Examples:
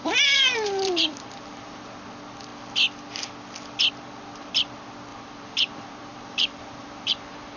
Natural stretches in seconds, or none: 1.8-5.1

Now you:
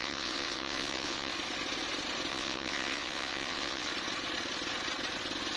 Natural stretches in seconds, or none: 1.3-2.3; 3.9-5.6